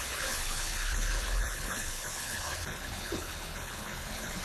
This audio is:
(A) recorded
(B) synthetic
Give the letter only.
B